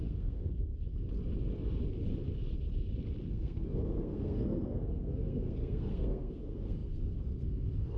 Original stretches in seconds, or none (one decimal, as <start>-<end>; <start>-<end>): 0.7-3.3